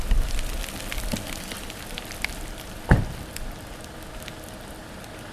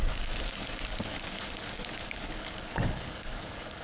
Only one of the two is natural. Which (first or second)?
first